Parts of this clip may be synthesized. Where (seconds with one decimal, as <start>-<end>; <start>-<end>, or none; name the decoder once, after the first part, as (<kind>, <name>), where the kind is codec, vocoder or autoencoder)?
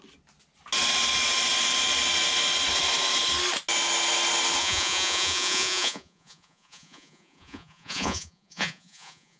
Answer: 4.6-9.4 (vocoder, Vocos)